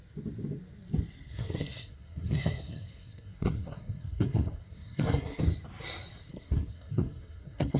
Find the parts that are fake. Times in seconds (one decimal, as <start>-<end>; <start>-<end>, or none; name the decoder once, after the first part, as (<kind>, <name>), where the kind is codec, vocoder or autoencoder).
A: 1.3-5.4 (codec, SNAC); 6.3-7.8